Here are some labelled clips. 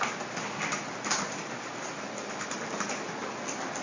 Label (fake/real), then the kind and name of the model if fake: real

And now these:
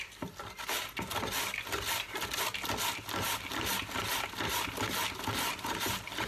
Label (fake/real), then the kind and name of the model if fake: real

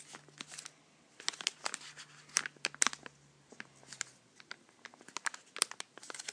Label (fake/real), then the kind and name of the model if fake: real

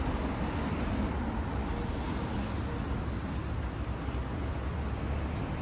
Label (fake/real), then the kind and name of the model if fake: real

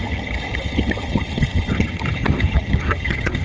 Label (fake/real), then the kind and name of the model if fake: fake, vocoder, HiFi-GAN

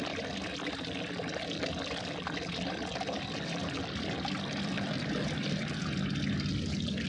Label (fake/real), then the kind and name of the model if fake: real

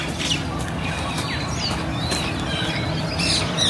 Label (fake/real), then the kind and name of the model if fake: real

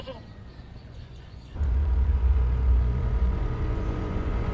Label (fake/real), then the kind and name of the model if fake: fake, vocoder, Vocos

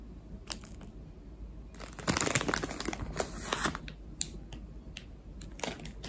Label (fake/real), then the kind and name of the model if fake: real